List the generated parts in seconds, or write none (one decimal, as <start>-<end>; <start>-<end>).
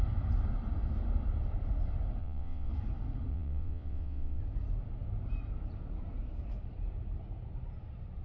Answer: 2.2-2.7; 3.3-4.4